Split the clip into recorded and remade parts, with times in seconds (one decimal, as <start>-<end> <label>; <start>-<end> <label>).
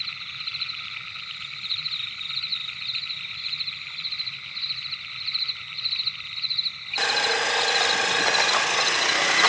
0.0-9.5 recorded